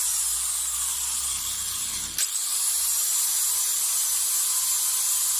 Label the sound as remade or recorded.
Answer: recorded